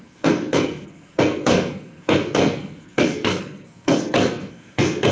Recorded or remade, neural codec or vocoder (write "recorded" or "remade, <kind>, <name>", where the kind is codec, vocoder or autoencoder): remade, codec, SNAC